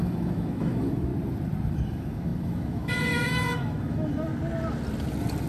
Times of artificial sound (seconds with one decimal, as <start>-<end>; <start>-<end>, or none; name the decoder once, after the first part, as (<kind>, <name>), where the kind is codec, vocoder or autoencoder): 0.0-1.1 (autoencoder, DAC-VAE); 1.7-4.3